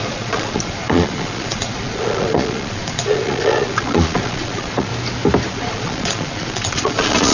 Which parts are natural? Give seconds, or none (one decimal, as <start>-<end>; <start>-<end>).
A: 4.9-5.5